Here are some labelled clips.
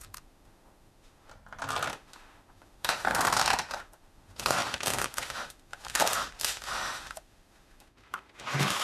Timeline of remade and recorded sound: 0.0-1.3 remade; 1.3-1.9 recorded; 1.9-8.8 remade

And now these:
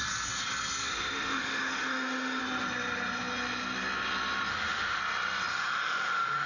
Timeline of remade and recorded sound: 0.0-0.9 recorded; 0.9-2.4 remade; 2.4-4.5 recorded; 4.5-5.0 remade; 5.0-5.5 recorded; 5.5-6.5 remade

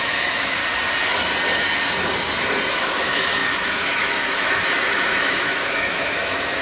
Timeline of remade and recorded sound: 0.0-0.6 remade; 0.6-2.7 recorded; 2.7-6.6 remade

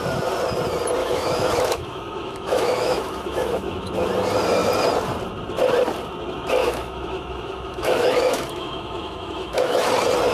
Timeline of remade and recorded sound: 0.0-1.0 recorded; 1.0-3.9 remade; 3.9-6.6 recorded; 6.6-9.9 remade; 9.9-10.3 recorded

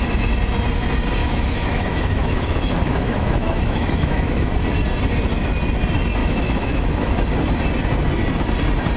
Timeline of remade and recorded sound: 0.0-1.2 recorded; 1.2-4.5 remade; 4.5-6.2 recorded; 6.2-7.1 remade; 7.1-9.0 recorded

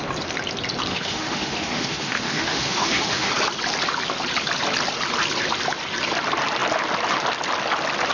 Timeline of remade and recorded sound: 0.0-0.9 recorded; 0.9-3.3 remade; 3.3-8.1 recorded